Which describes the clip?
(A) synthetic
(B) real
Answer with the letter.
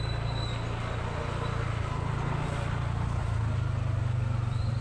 A